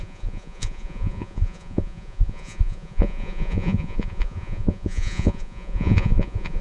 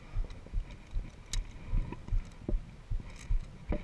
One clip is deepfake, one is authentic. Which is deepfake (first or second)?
first